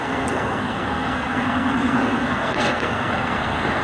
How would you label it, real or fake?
fake